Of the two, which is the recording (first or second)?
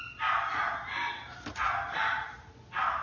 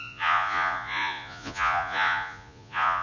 first